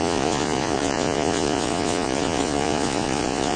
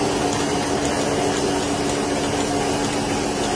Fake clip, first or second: first